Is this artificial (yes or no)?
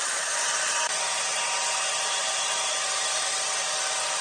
no